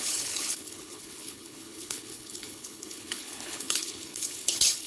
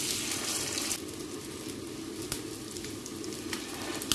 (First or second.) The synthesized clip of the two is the first